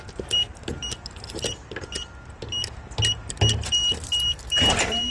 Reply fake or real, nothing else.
real